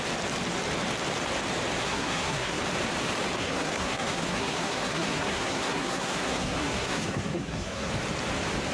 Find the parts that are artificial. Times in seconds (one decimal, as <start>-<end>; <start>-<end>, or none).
1.8-2.6; 3.4-7.9